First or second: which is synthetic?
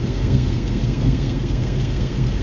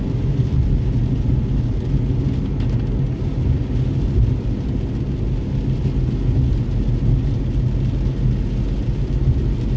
first